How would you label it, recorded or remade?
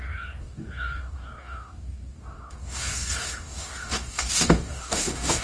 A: remade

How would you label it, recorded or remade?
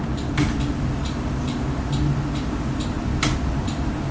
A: recorded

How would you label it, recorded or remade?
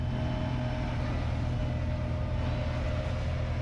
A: recorded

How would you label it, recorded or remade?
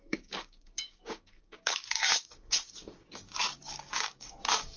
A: remade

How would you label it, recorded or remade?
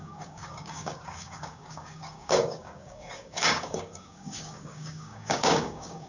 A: remade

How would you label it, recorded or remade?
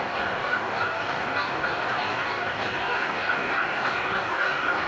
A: remade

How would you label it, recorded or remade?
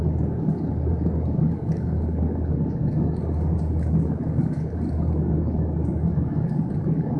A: remade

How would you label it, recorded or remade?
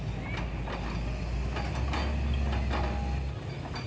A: recorded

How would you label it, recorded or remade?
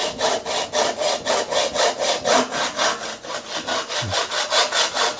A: recorded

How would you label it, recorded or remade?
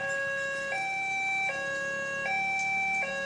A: recorded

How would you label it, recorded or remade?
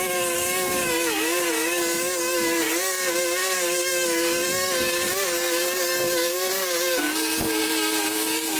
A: remade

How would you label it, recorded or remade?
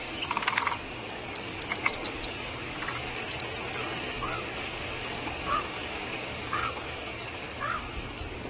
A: remade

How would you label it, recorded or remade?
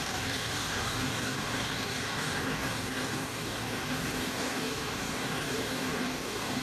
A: remade